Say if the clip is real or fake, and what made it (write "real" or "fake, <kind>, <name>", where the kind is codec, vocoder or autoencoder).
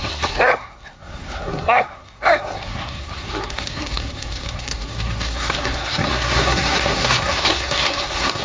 fake, codec, SNAC